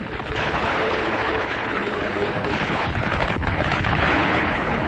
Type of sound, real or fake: fake